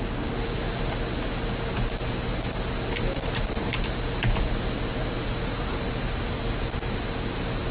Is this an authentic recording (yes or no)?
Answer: yes